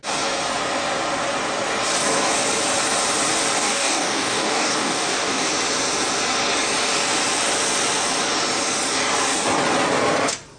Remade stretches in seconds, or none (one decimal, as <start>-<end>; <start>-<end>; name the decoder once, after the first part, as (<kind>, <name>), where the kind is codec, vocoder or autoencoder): 3.6-5.5 (codec, DAC)